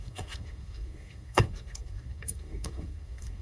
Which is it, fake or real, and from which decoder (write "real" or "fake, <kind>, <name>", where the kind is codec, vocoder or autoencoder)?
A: fake, codec, SNAC